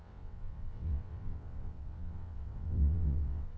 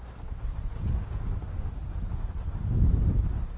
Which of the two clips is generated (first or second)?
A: first